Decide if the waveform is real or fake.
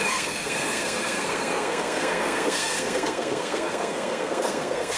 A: fake